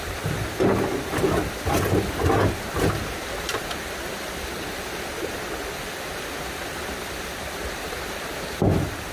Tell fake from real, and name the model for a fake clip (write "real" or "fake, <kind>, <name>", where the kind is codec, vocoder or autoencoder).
real